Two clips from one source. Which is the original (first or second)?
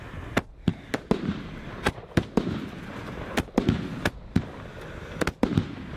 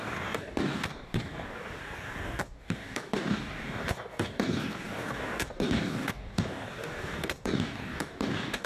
first